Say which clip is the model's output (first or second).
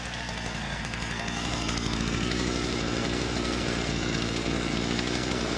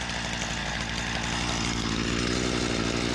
first